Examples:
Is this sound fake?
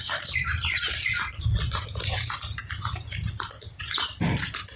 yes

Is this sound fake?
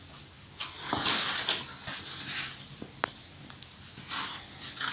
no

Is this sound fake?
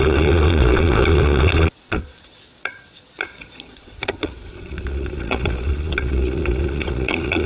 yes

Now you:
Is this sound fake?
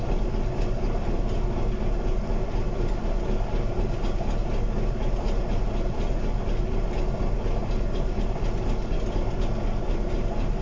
no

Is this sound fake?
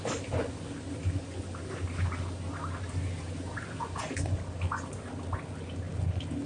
no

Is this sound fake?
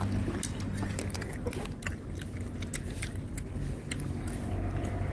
no